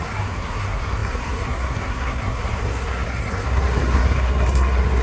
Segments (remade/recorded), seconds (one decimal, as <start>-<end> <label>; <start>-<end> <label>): 0.0-5.0 remade